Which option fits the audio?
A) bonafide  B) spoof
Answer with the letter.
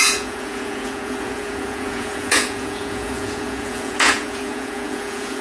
B